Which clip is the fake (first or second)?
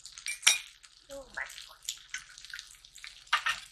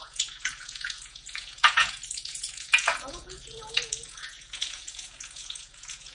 second